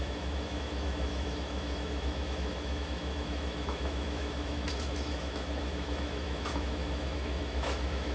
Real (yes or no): no